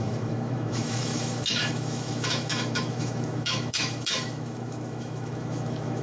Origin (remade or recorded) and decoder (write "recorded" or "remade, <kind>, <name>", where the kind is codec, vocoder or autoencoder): remade, autoencoder, DAC-VAE